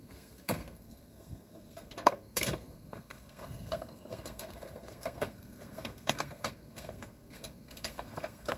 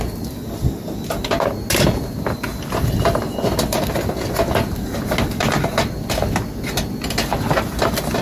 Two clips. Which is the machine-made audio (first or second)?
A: first